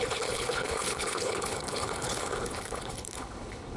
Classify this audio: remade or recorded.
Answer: remade